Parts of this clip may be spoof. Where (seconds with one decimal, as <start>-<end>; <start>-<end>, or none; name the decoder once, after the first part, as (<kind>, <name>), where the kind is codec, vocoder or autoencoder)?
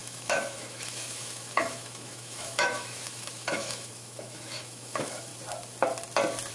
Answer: 0.0-5.3 (autoencoder, DAC-VAE)